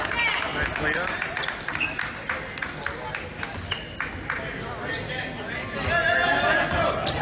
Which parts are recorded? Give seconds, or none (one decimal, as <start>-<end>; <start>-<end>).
0.0-0.5; 1.3-7.2